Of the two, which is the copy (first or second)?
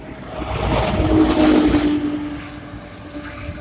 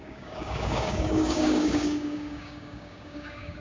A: second